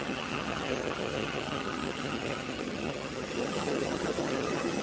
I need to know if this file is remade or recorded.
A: remade